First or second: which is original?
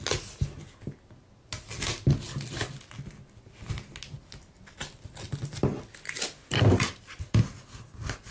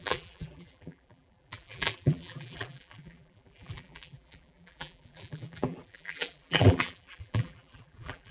first